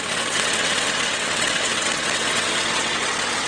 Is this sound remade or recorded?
remade